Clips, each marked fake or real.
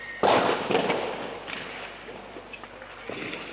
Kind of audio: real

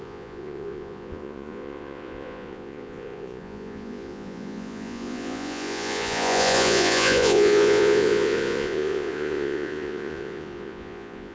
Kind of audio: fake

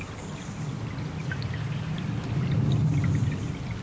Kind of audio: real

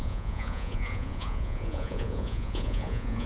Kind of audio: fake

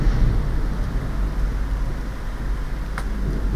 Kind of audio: real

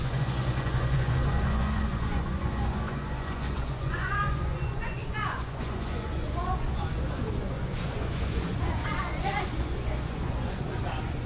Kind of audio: fake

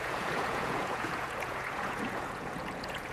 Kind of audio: fake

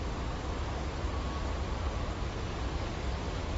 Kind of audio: real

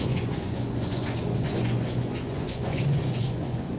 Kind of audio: fake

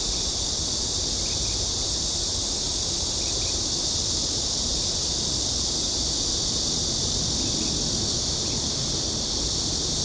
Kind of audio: real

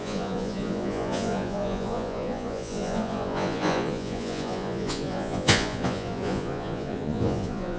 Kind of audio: fake